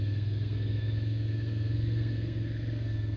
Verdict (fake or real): fake